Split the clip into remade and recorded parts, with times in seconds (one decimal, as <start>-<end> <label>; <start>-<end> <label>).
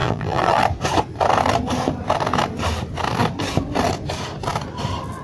0.0-0.6 remade; 0.6-5.2 recorded